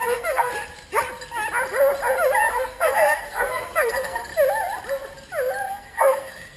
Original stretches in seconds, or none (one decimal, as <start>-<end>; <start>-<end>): 0.5-2.5; 4.3-5.7